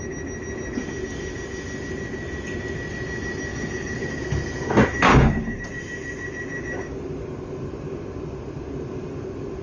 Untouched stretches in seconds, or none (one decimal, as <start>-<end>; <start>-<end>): 0.0-3.5; 4.2-5.1; 5.6-9.6